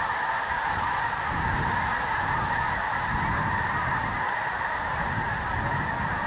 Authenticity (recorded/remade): recorded